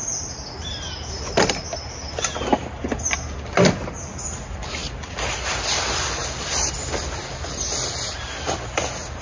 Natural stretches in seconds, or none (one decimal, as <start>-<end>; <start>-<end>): 0.0-9.2